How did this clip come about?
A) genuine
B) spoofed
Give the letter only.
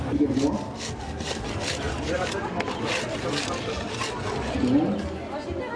A